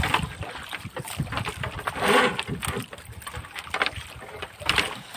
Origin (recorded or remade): recorded